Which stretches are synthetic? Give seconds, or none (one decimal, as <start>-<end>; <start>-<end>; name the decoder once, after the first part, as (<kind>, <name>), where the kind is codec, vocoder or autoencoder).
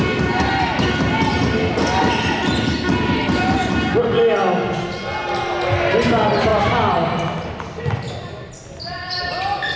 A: none